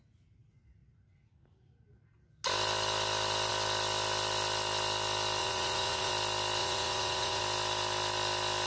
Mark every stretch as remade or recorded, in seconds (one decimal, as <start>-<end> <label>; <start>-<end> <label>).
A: 0.0-5.4 recorded; 5.4-6.1 remade; 6.1-6.6 recorded; 6.6-7.4 remade; 7.4-8.7 recorded